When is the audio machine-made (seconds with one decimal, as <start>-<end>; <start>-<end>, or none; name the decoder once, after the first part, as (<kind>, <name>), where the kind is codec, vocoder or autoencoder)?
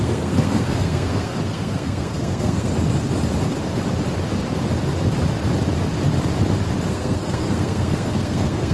0.0-2.7 (codec, SNAC); 6.9-8.7